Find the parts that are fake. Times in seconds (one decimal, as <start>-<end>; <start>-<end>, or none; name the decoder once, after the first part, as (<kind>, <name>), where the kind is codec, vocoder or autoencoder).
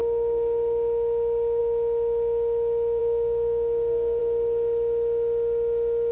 3.0-4.2 (codec, DAC)